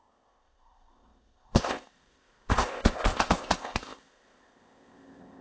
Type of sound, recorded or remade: remade